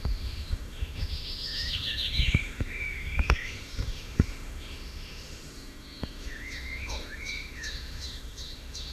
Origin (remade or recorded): remade